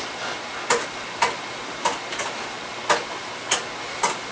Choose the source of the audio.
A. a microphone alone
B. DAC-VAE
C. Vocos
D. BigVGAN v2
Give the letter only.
A